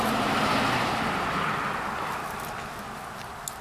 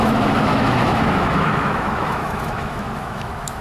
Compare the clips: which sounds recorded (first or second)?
first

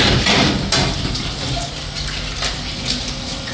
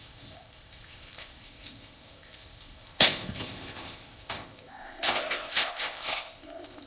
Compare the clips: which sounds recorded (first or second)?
first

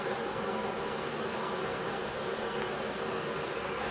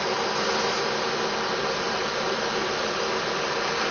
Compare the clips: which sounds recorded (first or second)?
second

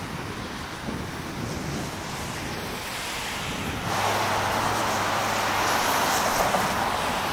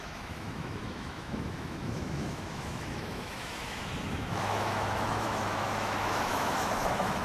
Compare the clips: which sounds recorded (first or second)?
first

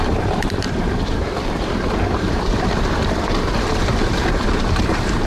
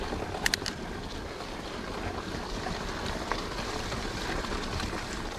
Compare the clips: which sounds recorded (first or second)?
second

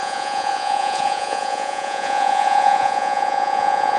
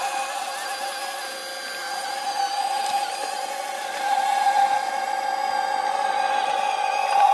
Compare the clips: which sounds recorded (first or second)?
second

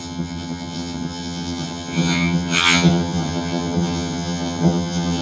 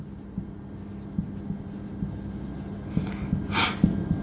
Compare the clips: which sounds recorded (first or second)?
second